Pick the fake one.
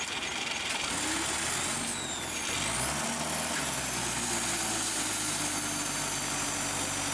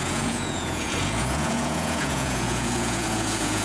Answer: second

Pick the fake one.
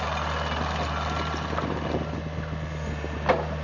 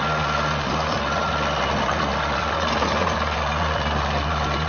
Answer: second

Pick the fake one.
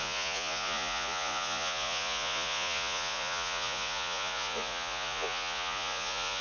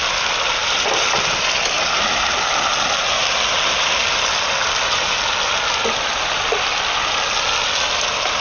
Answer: first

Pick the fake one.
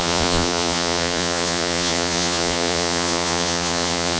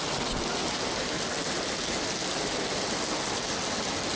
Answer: first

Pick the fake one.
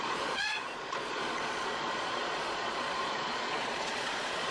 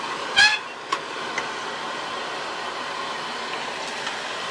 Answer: first